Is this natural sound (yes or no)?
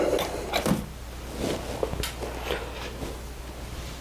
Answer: yes